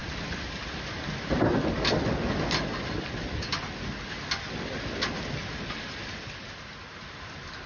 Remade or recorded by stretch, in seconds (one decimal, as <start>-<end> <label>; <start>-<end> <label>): 0.0-7.7 recorded